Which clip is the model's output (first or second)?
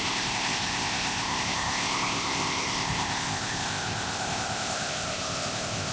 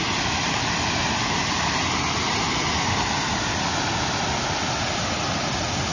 first